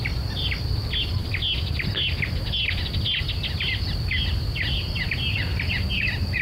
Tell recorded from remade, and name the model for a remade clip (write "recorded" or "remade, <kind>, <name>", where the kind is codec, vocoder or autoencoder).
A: recorded